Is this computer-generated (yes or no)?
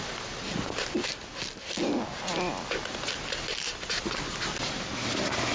no